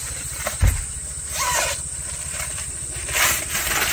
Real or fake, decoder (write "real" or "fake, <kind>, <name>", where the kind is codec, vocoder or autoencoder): real